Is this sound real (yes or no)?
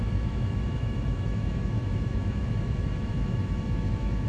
no